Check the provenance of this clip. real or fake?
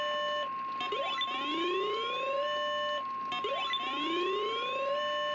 real